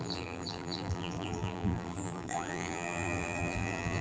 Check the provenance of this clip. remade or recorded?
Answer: remade